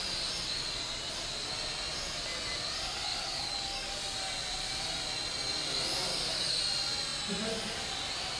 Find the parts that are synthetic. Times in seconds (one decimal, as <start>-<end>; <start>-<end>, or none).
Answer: 3.1-3.9; 6.1-6.6